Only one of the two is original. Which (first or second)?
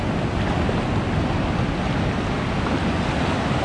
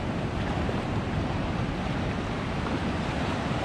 first